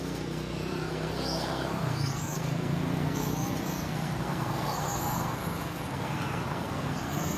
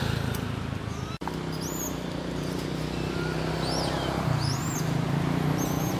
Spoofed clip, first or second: first